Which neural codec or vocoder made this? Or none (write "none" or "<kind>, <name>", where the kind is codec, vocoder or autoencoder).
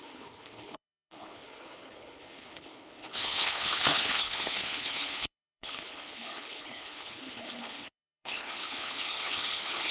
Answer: codec, HILCodec